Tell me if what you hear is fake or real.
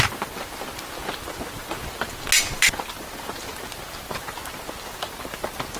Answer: real